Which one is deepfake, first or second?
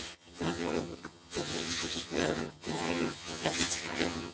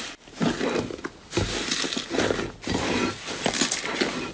first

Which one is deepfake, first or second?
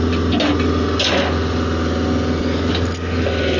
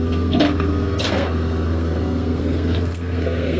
second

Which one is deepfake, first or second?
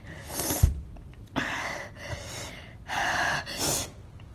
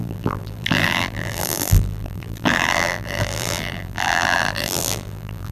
second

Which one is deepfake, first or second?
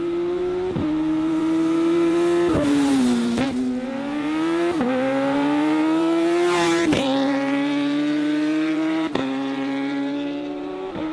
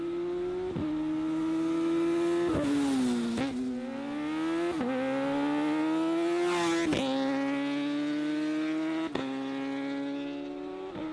first